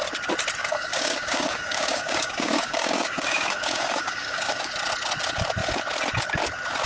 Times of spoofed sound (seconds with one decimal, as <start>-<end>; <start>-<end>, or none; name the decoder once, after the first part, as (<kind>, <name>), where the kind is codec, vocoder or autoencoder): 0.6-4.7 (codec, DAC)